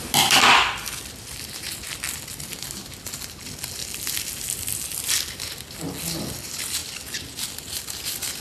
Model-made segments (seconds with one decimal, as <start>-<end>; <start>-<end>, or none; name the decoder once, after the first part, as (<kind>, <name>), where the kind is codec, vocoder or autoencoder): none